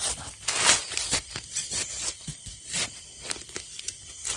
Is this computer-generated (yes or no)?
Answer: no